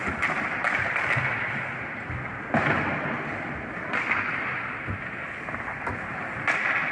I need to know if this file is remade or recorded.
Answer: recorded